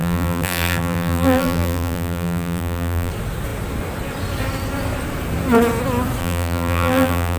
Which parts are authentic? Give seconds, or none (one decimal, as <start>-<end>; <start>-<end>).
3.1-6.2